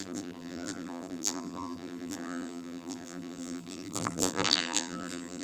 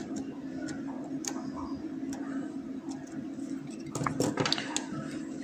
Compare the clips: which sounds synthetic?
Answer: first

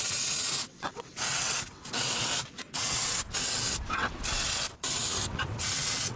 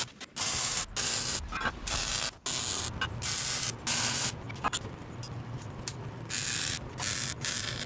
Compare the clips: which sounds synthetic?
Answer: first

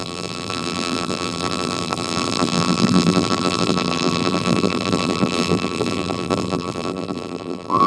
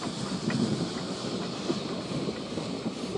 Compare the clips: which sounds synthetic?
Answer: first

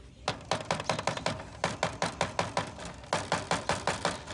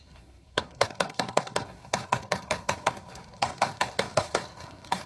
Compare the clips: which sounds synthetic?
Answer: second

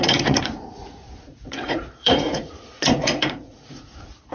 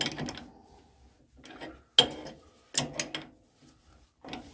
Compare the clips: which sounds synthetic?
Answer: first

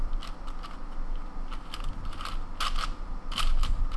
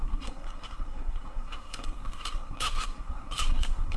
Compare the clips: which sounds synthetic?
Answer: second